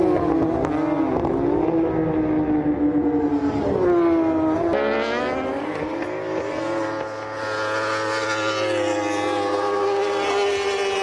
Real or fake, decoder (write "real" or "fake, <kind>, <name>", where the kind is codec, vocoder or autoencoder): real